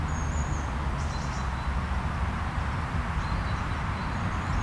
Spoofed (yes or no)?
no